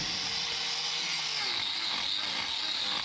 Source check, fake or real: real